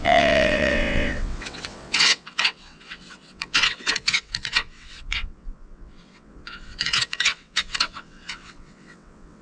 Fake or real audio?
fake